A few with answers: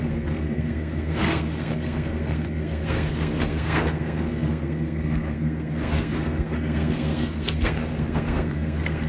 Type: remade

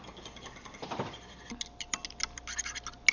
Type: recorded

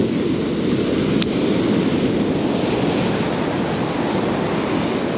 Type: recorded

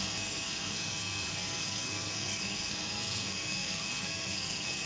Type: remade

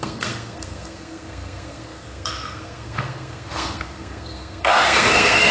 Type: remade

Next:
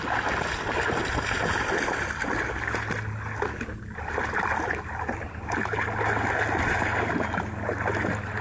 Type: recorded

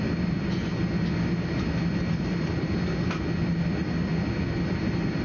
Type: recorded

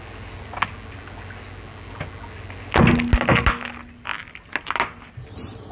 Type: recorded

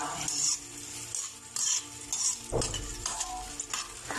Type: recorded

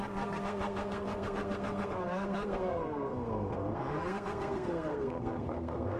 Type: remade